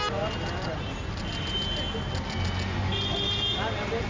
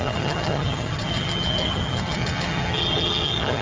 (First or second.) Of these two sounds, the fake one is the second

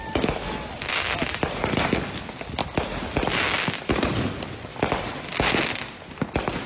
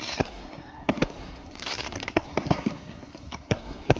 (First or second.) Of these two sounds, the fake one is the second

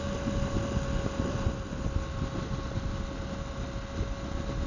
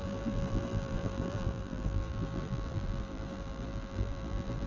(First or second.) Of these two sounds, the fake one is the second